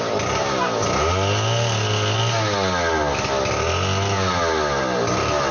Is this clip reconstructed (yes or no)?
no